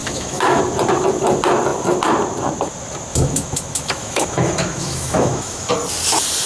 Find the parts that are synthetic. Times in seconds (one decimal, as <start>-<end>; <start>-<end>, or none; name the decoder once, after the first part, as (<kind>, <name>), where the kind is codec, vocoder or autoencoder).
0.0-0.6 (autoencoder, DAC-VAE); 3.1-5.7